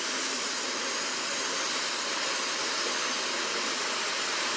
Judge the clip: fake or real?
fake